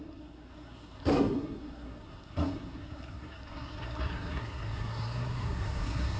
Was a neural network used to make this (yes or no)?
yes